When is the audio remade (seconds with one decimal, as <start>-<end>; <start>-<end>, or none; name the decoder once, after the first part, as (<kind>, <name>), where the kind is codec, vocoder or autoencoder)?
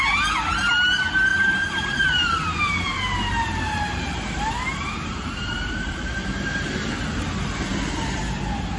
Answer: 1.3-6.6 (vocoder, BigVGAN v2); 7.7-8.2